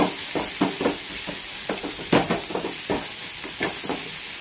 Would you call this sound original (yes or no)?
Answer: yes